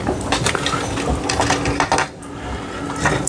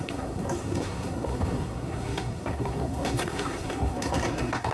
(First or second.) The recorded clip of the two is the first